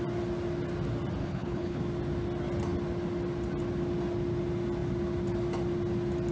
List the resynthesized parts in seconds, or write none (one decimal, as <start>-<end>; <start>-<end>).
1.2-1.8